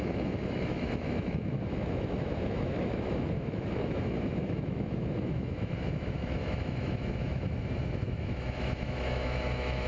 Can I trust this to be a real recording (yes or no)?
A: no